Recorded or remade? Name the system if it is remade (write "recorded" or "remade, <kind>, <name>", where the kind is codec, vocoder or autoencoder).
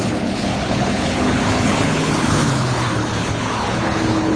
remade, codec, HILCodec